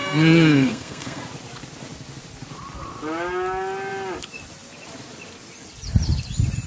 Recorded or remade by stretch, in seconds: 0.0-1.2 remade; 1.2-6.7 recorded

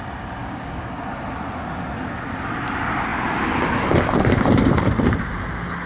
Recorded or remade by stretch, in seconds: 0.0-0.4 recorded; 0.4-1.0 remade; 1.0-5.9 recorded

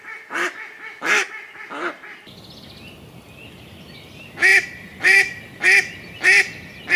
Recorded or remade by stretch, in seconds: 0.0-4.5 recorded; 4.5-5.4 remade; 5.4-7.0 recorded